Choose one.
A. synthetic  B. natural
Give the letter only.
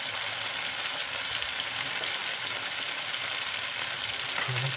B